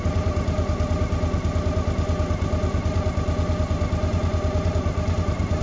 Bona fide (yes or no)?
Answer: yes